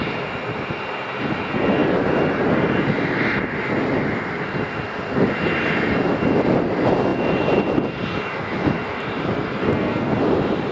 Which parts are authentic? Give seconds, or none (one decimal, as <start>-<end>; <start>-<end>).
0.0-9.6; 10.1-10.7